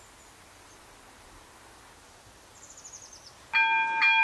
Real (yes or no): yes